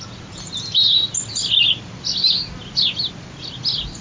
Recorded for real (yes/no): yes